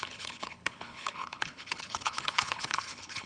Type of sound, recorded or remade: remade